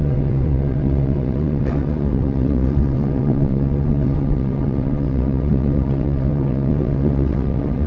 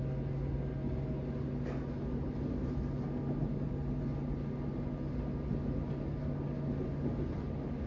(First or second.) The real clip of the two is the second